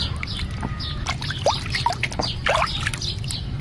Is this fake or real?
real